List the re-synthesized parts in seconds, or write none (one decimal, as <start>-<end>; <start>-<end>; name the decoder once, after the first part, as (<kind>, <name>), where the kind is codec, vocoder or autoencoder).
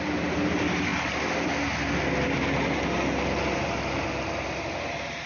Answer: none